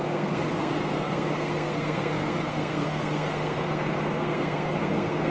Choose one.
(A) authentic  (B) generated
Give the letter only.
B